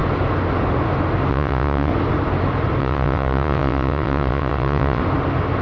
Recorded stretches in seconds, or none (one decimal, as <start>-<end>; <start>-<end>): 0.0-1.3; 1.9-2.8; 5.0-5.6